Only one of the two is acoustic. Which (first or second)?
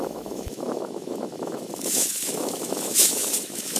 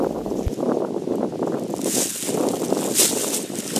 second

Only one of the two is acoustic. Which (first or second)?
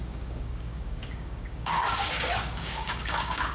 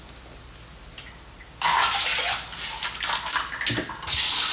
second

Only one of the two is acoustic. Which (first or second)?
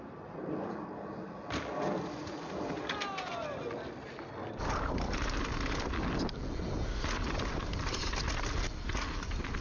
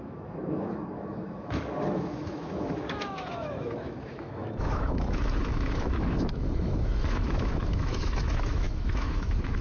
first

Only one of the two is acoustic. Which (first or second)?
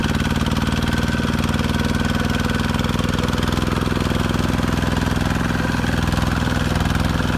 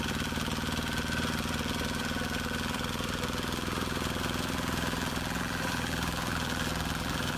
first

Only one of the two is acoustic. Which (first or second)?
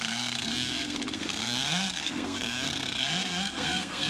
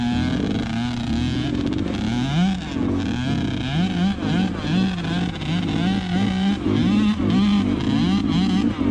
second